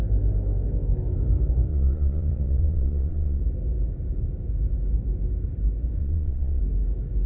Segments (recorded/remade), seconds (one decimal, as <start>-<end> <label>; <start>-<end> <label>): 0.0-1.7 recorded; 1.7-3.4 remade; 3.4-6.0 recorded; 6.0-6.6 remade; 6.6-7.3 recorded